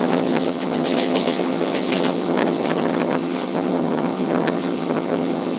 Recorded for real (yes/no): no